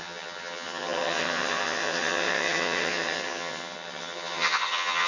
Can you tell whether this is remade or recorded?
remade